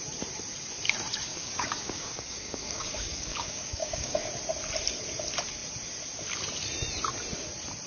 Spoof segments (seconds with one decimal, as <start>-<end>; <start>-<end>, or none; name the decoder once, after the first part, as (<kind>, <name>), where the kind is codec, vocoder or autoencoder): 1.3-4.2 (codec, DAC)